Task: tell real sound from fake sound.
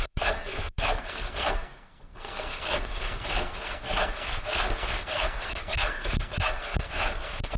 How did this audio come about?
fake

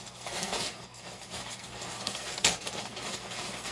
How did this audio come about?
fake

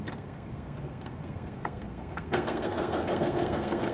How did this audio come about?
fake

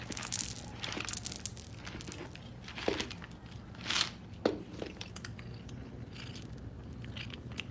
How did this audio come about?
real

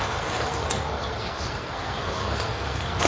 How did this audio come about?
fake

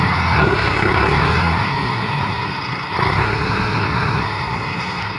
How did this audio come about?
fake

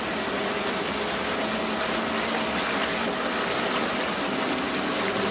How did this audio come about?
real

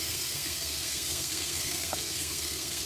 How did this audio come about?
fake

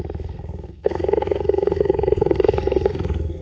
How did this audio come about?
fake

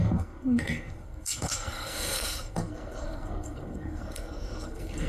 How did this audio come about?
fake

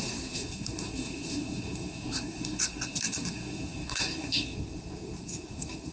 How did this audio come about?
fake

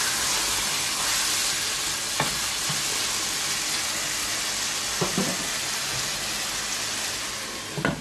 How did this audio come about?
real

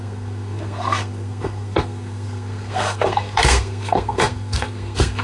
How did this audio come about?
fake